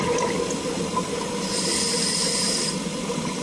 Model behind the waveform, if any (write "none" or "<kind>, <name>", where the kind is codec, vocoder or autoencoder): none